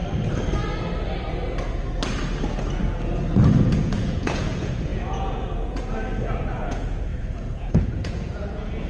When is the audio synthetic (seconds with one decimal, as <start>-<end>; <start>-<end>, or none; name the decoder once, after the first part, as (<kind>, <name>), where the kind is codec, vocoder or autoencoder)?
3.6-8.9 (vocoder, Vocos)